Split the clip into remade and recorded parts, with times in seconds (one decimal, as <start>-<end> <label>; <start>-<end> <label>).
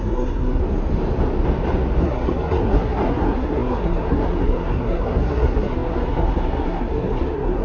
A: 0.0-0.6 remade; 0.6-2.0 recorded; 2.0-7.6 remade